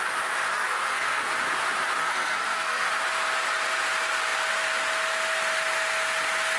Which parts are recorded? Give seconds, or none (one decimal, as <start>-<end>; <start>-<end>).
0.0-0.5; 1.3-2.0; 2.9-6.6